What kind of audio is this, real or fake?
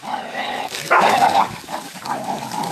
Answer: fake